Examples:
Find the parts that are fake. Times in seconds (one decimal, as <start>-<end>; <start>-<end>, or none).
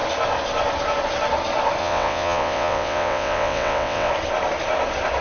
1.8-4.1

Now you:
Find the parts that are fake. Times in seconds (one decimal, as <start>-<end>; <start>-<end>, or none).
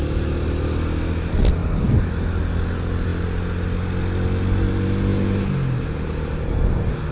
none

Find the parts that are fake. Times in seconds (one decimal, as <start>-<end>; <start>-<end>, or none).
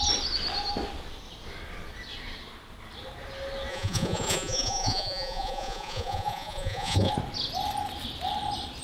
3.7-7.1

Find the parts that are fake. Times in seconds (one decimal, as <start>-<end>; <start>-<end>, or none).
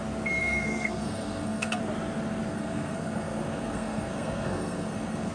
0.4-1.8; 2.5-5.3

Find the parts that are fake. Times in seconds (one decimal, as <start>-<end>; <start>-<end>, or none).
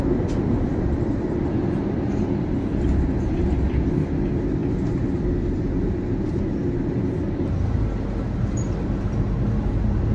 none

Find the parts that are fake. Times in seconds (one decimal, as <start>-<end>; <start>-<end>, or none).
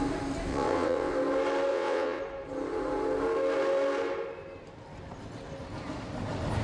0.5-1.1; 1.7-2.2